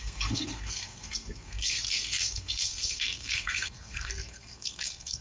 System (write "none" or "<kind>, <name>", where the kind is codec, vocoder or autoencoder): codec, SNAC